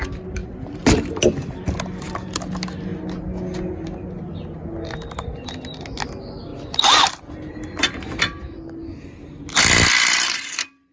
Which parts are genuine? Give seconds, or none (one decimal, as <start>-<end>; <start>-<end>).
0.0-10.9